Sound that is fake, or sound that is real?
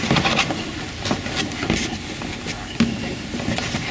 real